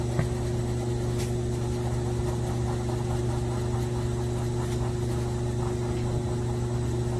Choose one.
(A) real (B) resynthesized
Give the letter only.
A